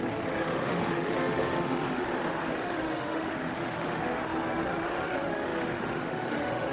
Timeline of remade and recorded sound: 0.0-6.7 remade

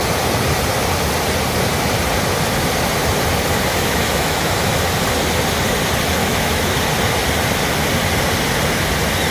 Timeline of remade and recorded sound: 0.0-3.7 recorded; 3.7-4.7 remade; 4.7-6.2 recorded; 6.2-6.8 remade; 6.8-9.3 recorded

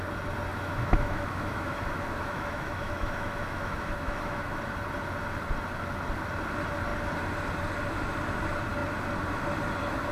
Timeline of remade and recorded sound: 0.0-0.5 recorded; 0.5-4.6 remade; 4.6-10.1 recorded

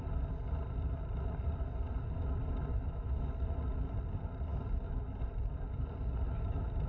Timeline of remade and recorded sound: 0.0-2.7 recorded; 2.7-3.3 remade; 3.3-6.9 recorded

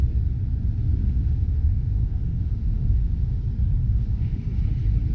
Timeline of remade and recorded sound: 0.0-0.9 recorded; 0.9-3.4 remade; 3.4-3.8 recorded; 3.8-4.4 remade; 4.4-5.1 recorded

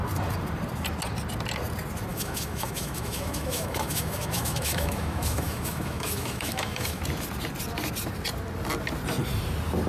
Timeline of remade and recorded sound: 0.0-2.1 recorded; 2.1-7.0 remade; 7.0-9.9 recorded